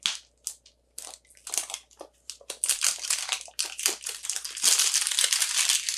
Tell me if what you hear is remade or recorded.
recorded